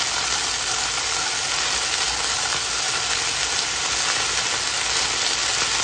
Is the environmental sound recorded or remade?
recorded